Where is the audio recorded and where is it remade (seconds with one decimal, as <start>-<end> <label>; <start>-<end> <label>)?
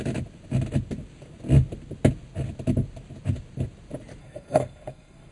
0.0-4.2 recorded; 4.2-5.3 remade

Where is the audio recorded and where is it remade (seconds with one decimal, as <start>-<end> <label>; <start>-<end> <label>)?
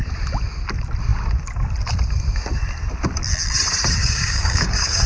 0.0-4.0 recorded; 4.0-5.1 remade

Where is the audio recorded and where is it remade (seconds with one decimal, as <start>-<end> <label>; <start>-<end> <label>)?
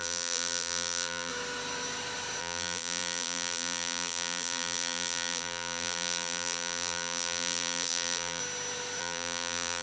0.0-1.3 remade; 1.3-2.4 recorded; 2.4-8.4 remade; 8.4-9.0 recorded; 9.0-9.8 remade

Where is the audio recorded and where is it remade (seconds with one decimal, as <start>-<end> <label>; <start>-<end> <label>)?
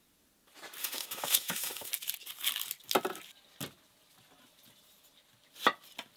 0.0-0.8 recorded; 0.8-1.9 remade; 1.9-6.2 recorded